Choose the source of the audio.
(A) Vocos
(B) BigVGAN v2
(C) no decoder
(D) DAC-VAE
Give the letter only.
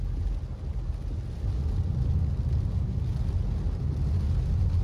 C